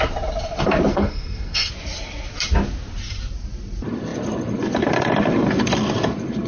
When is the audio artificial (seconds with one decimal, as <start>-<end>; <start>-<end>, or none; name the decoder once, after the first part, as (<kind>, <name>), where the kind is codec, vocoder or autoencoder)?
0.9-1.7 (codec, SNAC)